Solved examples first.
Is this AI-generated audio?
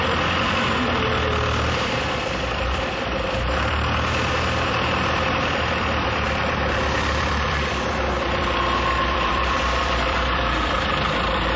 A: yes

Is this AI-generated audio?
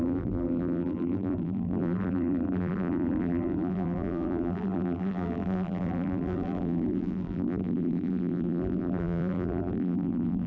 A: yes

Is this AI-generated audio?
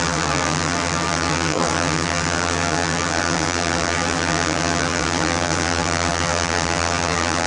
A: yes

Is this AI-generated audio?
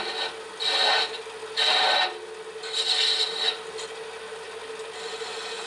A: no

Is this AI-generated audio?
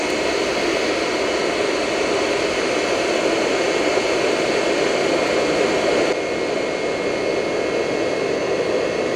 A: no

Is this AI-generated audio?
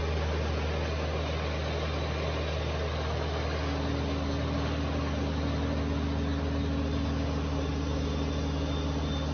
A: no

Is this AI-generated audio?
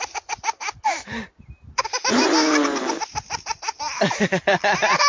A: yes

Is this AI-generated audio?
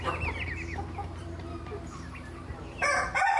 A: yes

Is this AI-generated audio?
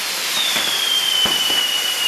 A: yes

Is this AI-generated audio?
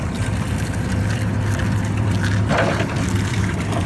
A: yes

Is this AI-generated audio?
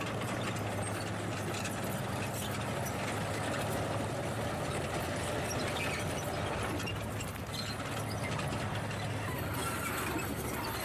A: no